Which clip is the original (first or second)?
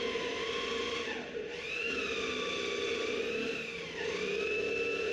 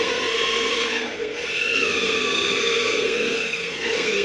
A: first